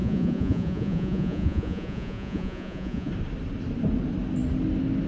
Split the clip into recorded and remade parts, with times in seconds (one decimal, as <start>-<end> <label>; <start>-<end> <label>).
0.0-3.1 remade; 3.1-5.1 recorded

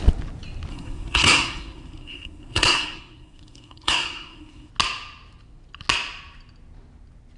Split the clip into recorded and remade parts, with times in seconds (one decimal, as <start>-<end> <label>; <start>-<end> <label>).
0.0-0.7 recorded; 0.7-4.7 remade; 4.7-7.4 recorded

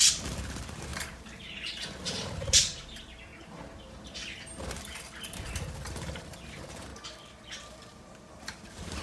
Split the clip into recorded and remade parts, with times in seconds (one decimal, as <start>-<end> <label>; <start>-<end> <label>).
0.0-0.9 remade; 0.9-2.0 recorded; 2.0-3.3 remade; 3.3-5.9 recorded; 5.9-6.9 remade; 6.9-7.5 recorded; 7.5-9.0 remade

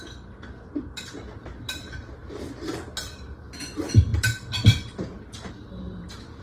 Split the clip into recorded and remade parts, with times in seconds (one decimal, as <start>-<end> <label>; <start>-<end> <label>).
0.0-2.2 remade; 2.2-3.0 recorded; 3.0-6.4 remade

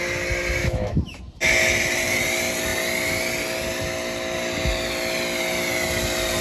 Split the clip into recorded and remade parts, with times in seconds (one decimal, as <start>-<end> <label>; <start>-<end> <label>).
0.0-0.6 recorded; 0.6-1.2 remade; 1.2-6.4 recorded

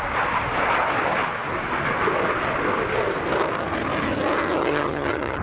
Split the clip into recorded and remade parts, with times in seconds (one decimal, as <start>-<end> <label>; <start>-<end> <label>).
0.0-4.6 recorded; 4.6-5.4 remade

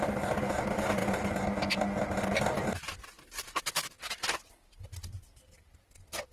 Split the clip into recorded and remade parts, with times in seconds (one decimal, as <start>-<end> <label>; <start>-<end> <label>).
0.0-6.3 recorded

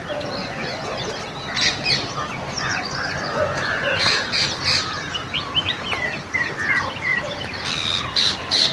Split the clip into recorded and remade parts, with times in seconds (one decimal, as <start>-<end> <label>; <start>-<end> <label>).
0.0-0.4 recorded; 0.4-1.1 remade; 1.1-2.3 recorded; 2.3-4.1 remade; 4.1-8.7 recorded